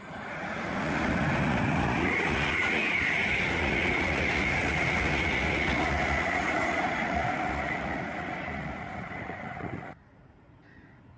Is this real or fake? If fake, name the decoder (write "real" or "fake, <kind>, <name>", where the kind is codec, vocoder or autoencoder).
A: fake, vocoder, Vocos